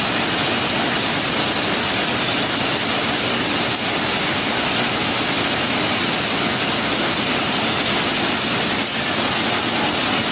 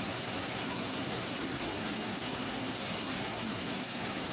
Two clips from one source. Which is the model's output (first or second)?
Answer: second